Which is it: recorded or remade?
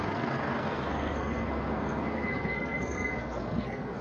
remade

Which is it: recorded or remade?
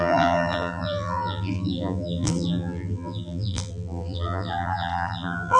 remade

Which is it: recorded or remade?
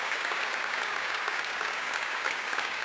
remade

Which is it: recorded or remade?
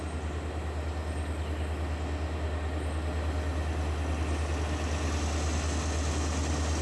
recorded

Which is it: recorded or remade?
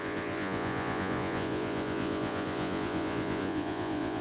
remade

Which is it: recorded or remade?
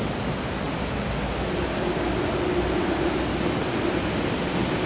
recorded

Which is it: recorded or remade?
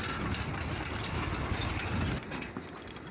recorded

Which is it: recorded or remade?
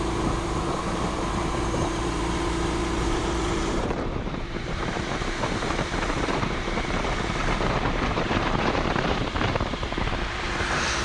remade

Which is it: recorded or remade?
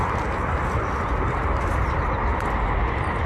recorded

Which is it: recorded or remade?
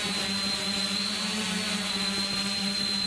recorded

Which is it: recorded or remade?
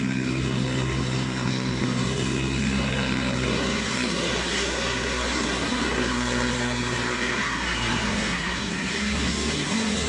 remade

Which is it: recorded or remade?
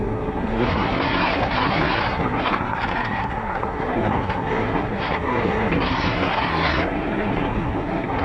remade